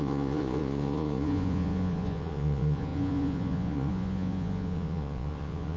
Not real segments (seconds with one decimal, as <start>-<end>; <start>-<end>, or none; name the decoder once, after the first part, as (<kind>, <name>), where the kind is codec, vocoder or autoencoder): 0.0-5.8 (vocoder, Vocos)